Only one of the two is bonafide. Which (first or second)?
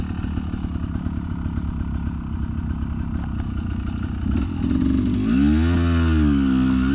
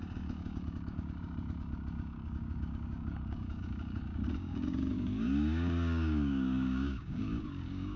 first